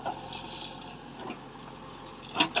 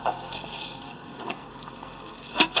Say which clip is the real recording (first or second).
first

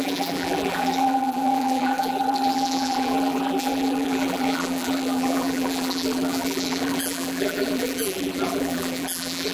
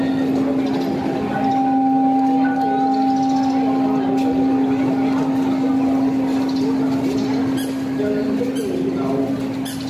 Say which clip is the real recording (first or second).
second